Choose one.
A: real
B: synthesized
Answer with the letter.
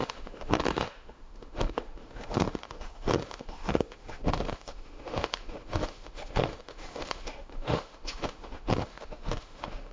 B